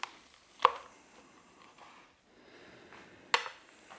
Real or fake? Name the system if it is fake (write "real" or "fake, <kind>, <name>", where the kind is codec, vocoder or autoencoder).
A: real